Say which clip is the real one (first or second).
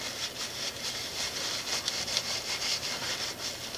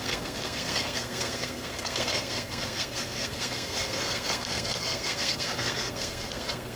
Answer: first